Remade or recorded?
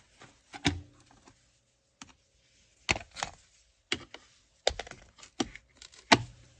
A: recorded